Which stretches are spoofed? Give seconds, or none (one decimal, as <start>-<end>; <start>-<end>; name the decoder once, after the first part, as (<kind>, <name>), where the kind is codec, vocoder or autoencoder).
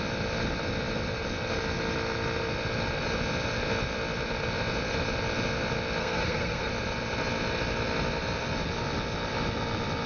6.0-6.7 (codec, SNAC)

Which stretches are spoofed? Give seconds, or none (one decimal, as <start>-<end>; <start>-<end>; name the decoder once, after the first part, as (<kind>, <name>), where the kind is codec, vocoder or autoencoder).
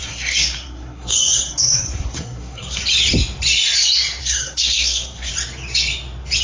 0.0-2.8 (codec, SNAC); 4.2-5.3